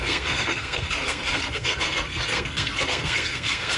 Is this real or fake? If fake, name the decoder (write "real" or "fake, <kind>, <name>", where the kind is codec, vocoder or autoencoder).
fake, codec, SNAC